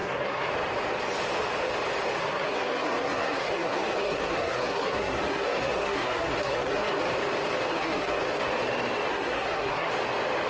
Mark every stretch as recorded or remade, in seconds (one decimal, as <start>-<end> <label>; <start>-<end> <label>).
0.0-0.5 remade; 0.5-2.2 recorded; 2.2-7.0 remade; 7.0-7.7 recorded; 7.7-8.2 remade; 8.2-9.1 recorded; 9.1-9.9 remade; 9.9-10.5 recorded